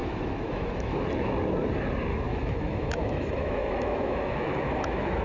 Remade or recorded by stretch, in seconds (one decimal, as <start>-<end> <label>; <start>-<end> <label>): 0.0-1.0 remade; 1.0-2.1 recorded; 2.1-5.2 remade